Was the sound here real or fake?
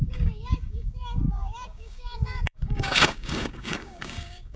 fake